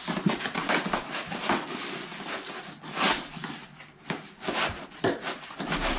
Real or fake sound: real